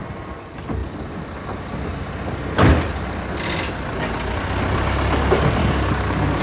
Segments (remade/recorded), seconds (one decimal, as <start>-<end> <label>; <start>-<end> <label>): 0.0-5.6 recorded; 5.6-6.4 remade